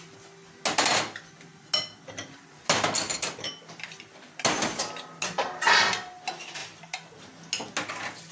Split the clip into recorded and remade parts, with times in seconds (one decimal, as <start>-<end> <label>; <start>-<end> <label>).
0.0-8.3 recorded